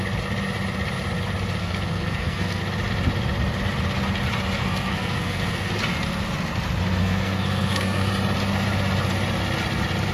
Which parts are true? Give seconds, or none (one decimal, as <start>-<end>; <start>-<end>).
0.0-1.6; 2.6-4.6; 5.7-7.0; 8.1-10.1